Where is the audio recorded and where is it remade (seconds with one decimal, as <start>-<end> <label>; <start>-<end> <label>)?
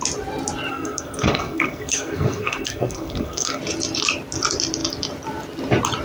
0.0-0.7 recorded; 0.7-3.6 remade; 3.6-6.0 recorded